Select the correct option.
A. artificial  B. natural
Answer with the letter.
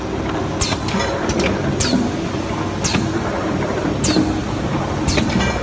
B